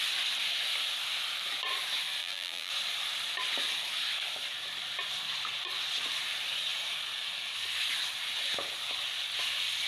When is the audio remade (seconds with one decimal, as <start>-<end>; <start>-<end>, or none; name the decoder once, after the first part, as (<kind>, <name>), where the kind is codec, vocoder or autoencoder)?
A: 2.2-2.7 (vocoder, BigVGAN v2)